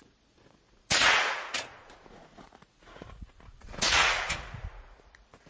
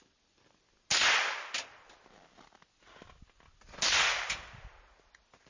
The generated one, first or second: first